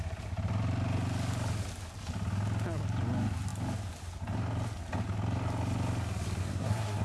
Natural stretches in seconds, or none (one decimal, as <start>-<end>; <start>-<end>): 0.0-6.4